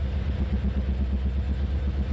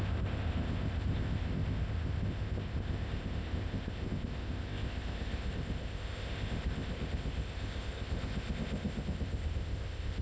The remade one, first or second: second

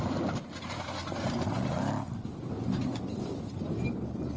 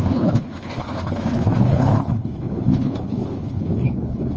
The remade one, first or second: second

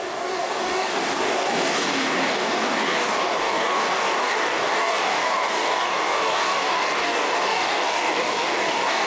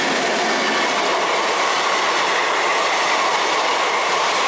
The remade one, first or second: first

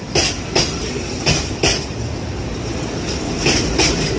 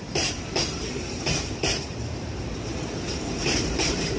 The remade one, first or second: second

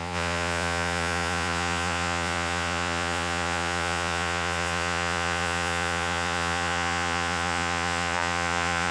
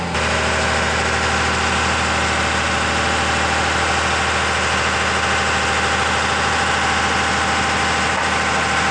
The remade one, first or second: first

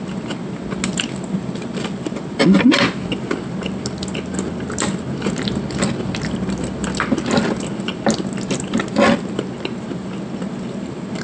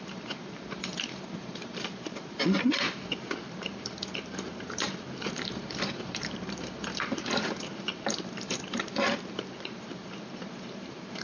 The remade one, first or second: second